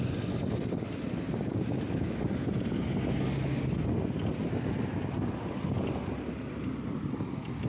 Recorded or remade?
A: recorded